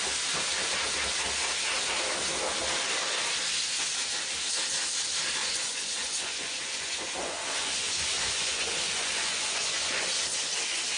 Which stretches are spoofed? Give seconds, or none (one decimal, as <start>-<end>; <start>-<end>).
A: 5.4-10.1